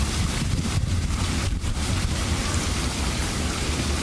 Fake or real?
fake